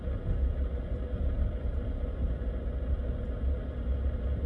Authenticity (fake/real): real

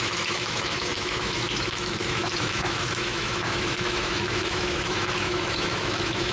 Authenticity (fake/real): fake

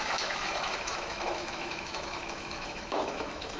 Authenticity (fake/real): fake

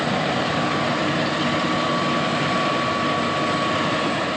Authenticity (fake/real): real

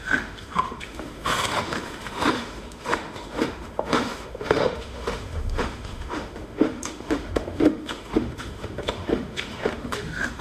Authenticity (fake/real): fake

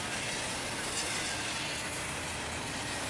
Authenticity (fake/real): real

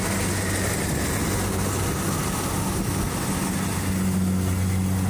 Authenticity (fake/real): real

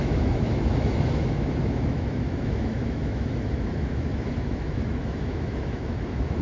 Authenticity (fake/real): fake